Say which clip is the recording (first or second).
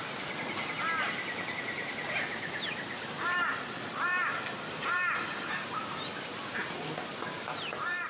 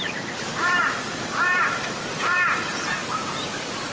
first